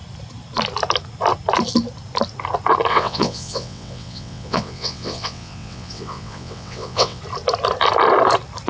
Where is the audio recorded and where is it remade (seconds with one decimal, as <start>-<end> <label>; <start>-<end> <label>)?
0.0-2.9 recorded; 2.9-7.2 remade; 7.2-8.7 recorded